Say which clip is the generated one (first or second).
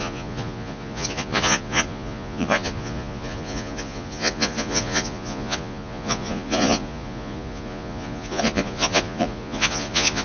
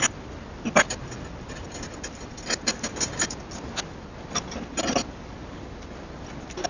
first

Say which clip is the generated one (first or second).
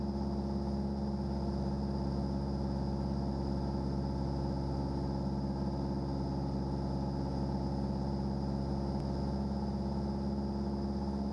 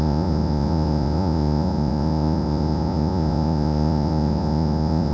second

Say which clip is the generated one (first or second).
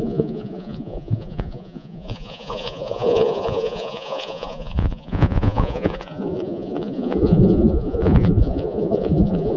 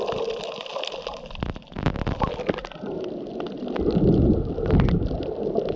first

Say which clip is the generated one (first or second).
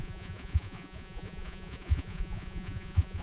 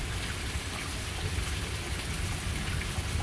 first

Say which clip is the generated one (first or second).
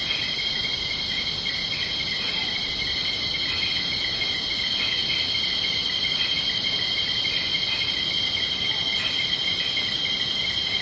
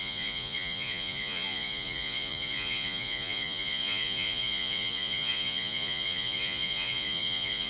second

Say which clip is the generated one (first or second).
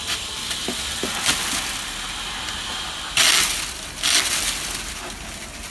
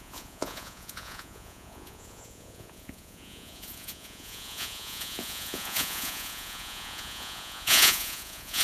second